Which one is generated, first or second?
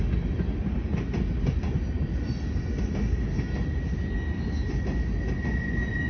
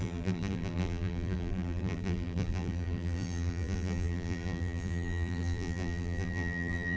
second